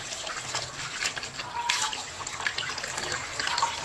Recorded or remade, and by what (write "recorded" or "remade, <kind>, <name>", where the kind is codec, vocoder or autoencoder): recorded